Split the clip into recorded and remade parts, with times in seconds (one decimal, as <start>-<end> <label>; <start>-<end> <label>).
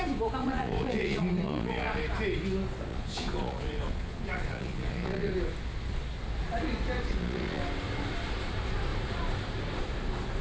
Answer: 0.0-0.4 recorded; 0.4-2.0 remade; 2.0-2.9 recorded; 2.9-5.3 remade; 5.3-7.1 recorded; 7.1-7.6 remade; 7.6-10.4 recorded